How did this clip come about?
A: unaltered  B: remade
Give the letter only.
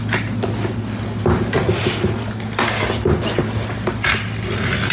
A